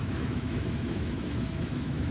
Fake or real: fake